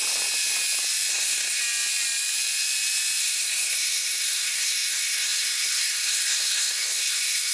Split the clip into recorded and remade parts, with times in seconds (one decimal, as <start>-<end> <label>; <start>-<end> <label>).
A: 0.0-1.1 recorded; 1.1-1.6 remade; 1.6-3.2 recorded; 3.2-7.5 remade